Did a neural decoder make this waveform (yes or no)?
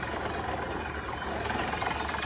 yes